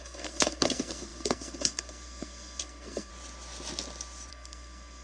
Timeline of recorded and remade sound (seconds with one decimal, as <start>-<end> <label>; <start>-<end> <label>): 0.0-3.1 remade; 3.1-4.3 recorded; 4.3-5.0 remade